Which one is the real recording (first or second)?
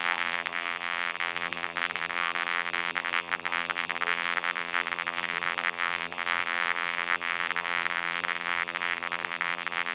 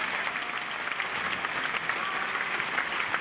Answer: second